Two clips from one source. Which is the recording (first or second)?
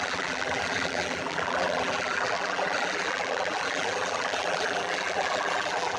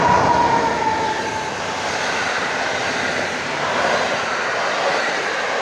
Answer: second